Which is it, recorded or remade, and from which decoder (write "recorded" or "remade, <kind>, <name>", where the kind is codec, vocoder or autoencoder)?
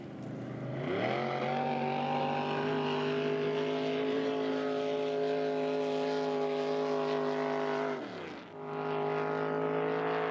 recorded